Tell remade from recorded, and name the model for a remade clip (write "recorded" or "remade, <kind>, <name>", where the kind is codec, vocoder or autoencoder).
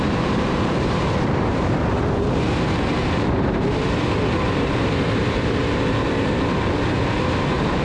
remade, vocoder, BigVGAN v2